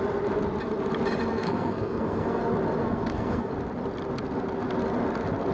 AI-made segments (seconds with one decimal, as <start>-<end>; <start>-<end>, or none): 1.3-2.4; 2.8-3.5